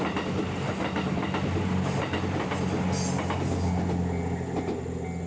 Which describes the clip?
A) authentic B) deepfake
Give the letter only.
A